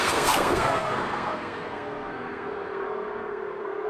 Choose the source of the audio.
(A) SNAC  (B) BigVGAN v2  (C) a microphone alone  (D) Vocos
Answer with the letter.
A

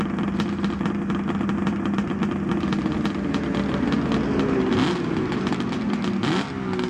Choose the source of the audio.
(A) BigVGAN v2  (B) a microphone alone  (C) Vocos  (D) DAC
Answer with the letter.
B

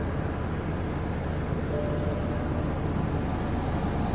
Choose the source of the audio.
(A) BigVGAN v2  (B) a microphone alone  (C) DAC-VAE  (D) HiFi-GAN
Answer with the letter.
B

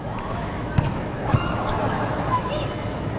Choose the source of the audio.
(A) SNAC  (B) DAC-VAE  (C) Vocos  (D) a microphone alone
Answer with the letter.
B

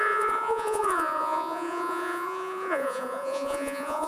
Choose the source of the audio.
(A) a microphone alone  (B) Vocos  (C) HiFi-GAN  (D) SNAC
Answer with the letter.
B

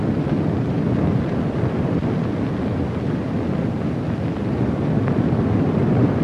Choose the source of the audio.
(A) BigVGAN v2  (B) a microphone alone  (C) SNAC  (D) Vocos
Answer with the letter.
B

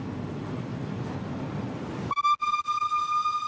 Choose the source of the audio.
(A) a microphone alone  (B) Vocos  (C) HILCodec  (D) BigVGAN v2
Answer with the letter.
A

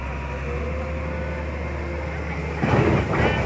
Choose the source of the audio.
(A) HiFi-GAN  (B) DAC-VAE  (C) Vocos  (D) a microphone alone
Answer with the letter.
D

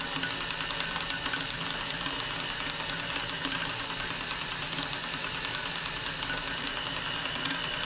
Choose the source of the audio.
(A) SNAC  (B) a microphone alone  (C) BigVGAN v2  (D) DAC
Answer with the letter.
B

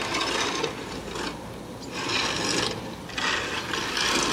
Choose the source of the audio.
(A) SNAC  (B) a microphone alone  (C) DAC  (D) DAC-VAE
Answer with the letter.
B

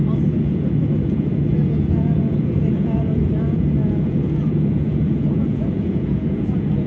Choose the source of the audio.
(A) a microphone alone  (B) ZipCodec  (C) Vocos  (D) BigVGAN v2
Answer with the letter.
C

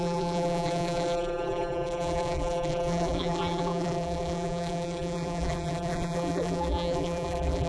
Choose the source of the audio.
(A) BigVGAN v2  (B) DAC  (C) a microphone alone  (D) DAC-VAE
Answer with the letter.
A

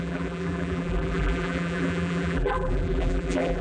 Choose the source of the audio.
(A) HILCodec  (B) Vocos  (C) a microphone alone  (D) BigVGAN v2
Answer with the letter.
D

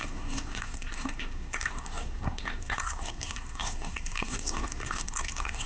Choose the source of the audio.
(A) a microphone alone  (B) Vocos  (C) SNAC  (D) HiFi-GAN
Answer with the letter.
C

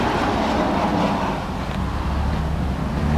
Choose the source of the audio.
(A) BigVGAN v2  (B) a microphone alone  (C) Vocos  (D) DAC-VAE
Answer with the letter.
B